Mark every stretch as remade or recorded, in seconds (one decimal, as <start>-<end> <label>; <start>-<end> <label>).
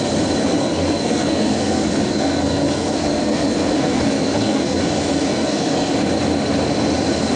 0.0-0.4 recorded; 0.4-4.8 remade; 4.8-5.3 recorded; 5.3-5.9 remade; 5.9-7.4 recorded